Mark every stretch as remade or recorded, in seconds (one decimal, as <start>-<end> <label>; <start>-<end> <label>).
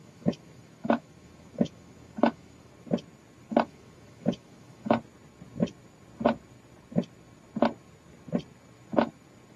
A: 0.0-2.7 remade; 2.7-3.5 recorded; 3.5-4.9 remade; 4.9-9.6 recorded